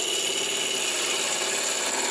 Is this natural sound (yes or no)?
yes